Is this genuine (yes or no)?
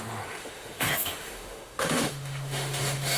no